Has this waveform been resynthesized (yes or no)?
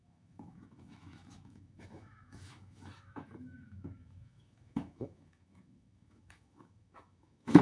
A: yes